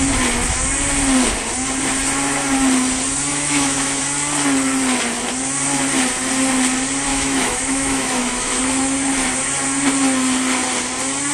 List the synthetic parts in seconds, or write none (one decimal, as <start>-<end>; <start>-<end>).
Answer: 3.3-4.0; 7.1-8.6